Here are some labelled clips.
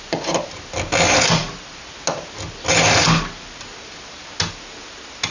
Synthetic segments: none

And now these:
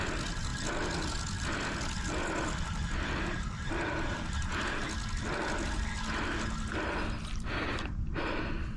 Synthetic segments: none

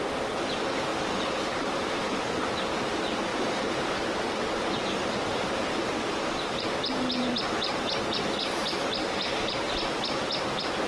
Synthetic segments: 0.9-2.2 (vocoder, BigVGAN v2); 3.3-8.0; 8.6-10.3